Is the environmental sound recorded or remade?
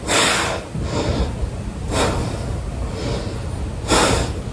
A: recorded